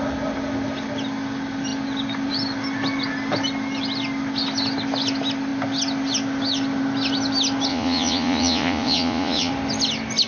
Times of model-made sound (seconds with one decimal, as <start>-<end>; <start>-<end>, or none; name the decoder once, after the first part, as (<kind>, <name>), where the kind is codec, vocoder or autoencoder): 7.7-9.5 (vocoder, Vocos)